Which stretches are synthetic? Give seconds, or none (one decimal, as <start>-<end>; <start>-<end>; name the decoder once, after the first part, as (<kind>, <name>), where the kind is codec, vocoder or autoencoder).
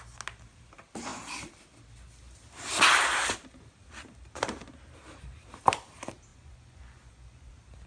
6.3-7.5 (vocoder, Vocos)